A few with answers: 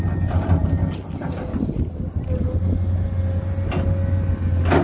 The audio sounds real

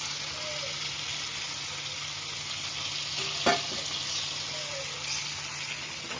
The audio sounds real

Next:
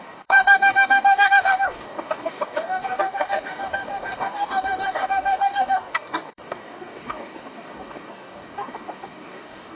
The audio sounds fake